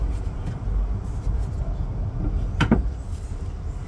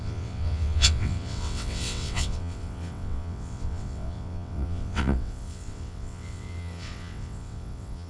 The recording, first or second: first